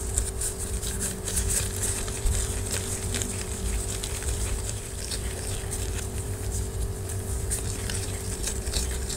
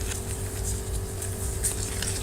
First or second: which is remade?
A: first